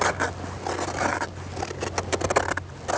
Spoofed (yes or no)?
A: no